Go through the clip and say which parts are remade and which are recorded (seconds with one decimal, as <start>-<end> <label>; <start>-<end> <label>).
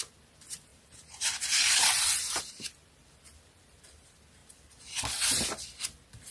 0.0-0.7 recorded; 0.7-2.4 remade; 2.4-6.3 recorded